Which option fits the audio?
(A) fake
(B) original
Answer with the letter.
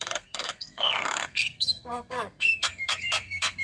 A